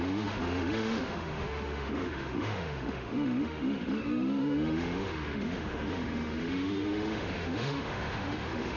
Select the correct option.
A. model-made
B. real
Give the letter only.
A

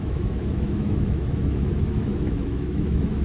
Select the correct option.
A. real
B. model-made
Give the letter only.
B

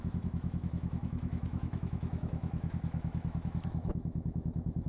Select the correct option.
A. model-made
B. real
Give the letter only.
A